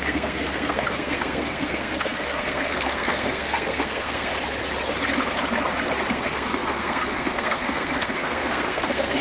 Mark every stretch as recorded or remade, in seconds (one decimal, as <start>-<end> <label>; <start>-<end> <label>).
0.0-4.3 remade; 4.3-6.1 recorded; 6.1-9.2 remade